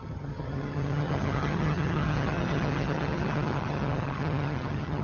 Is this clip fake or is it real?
fake